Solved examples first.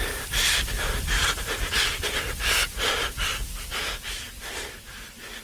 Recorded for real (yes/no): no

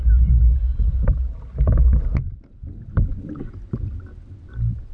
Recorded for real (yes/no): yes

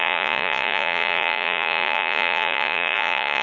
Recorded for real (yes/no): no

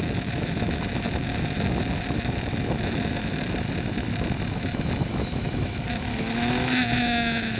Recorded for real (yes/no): no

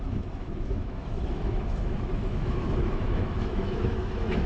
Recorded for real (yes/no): no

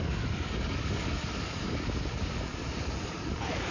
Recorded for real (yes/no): no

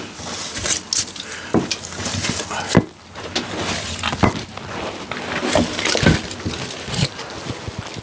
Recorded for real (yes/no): yes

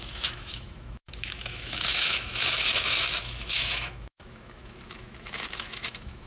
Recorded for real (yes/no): no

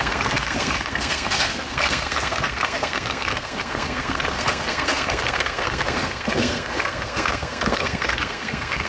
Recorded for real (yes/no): no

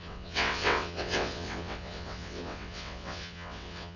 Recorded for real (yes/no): no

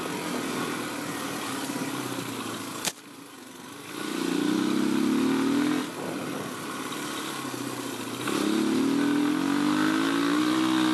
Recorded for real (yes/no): yes